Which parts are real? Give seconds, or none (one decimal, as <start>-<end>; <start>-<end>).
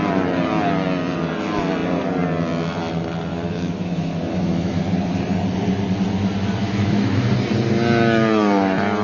0.0-3.3; 4.8-6.6; 7.3-9.0